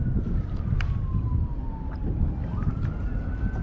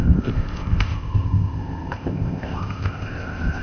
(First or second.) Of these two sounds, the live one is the first